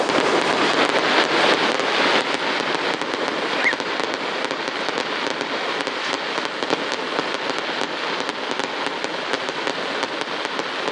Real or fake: real